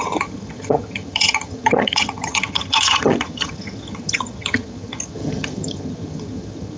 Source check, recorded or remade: remade